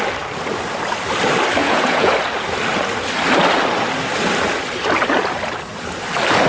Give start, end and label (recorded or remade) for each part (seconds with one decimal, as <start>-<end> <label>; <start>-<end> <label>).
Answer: 0.0-1.6 recorded; 1.6-2.1 remade; 2.1-6.5 recorded